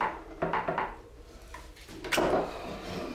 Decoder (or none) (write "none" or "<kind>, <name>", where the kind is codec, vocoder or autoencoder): vocoder, BigVGAN v2